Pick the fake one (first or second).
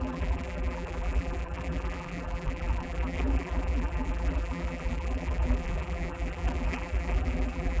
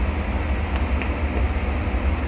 first